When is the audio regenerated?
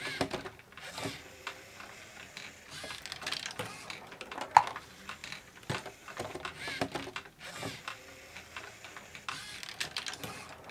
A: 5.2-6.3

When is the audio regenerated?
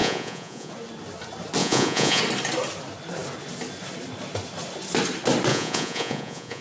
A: 0.0-0.7; 1.6-2.2; 5.5-6.6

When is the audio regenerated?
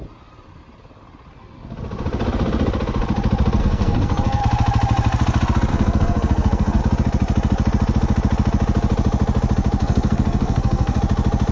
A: 3.6-4.4; 5.7-6.8; 9.8-11.0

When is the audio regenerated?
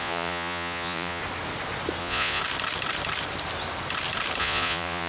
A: 0.0-1.2; 2.0-2.4; 4.4-5.1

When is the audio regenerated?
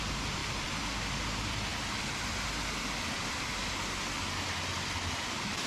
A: none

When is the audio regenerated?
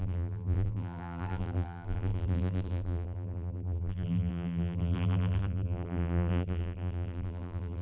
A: 0.0-7.8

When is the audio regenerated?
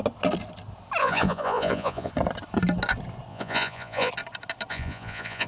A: 1.0-2.1; 3.3-4.1; 4.7-5.5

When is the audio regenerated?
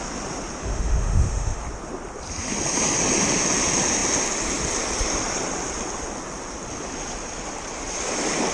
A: 0.6-1.6